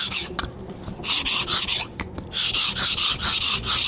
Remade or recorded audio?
recorded